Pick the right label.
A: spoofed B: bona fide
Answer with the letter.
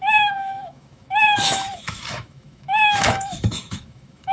A